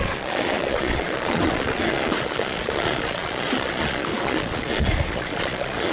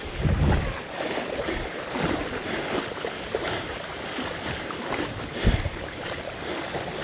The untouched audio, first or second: second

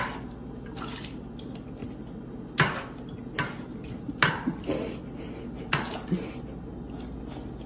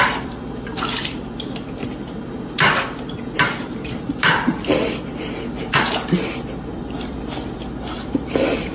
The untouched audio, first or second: first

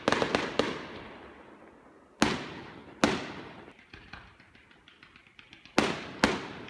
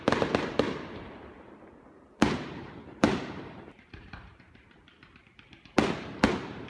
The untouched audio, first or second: first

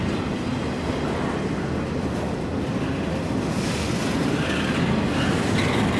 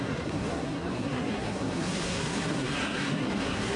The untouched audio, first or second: first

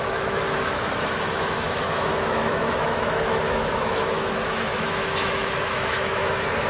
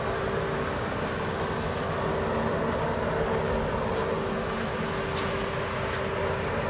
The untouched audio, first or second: second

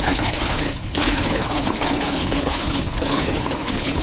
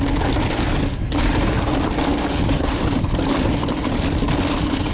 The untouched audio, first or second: second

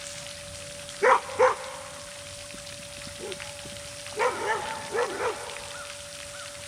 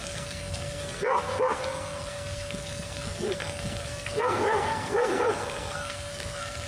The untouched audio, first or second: first